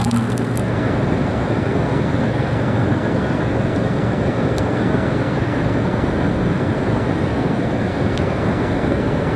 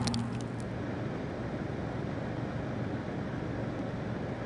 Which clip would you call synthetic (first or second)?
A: first